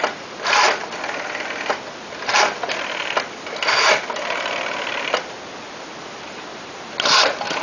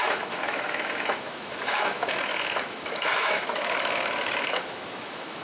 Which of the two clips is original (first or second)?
first